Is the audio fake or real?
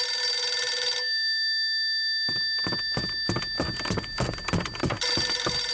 real